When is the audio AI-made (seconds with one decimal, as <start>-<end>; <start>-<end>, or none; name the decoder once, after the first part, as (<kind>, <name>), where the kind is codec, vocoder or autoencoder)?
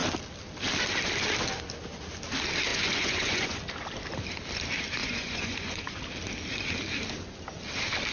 2.7-3.6 (vocoder, Vocos); 5.0-6.0